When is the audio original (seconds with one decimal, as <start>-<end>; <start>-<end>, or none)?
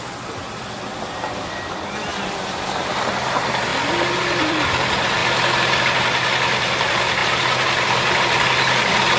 0.0-2.1; 2.9-3.7; 4.5-5.2; 5.8-9.2